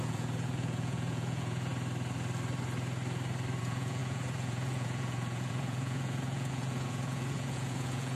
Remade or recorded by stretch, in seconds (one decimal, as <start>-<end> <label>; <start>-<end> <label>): 0.0-1.7 remade; 1.7-3.6 recorded; 3.6-8.2 remade